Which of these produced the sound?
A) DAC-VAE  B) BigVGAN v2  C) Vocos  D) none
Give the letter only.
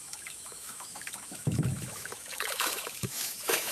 A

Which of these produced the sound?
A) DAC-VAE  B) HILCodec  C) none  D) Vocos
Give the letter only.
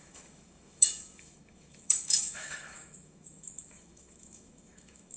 A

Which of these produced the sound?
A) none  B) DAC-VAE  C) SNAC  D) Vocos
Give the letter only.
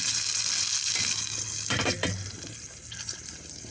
A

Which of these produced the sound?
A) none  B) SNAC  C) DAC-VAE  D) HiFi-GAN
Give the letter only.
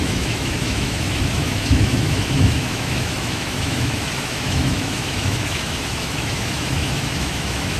C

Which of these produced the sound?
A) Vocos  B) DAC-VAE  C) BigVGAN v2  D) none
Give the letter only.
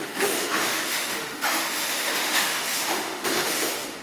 B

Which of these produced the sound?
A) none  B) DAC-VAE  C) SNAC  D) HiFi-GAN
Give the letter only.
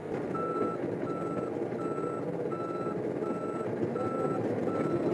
A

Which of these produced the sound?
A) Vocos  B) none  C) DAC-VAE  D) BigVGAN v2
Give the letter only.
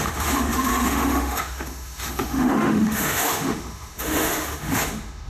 C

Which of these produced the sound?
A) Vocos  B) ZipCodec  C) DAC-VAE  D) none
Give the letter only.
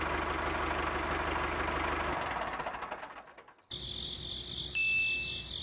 D